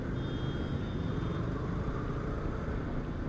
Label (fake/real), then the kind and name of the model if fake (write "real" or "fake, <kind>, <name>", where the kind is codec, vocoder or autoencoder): real